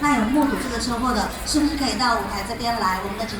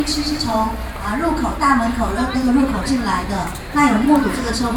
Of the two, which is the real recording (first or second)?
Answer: first